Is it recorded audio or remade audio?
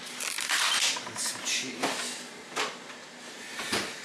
recorded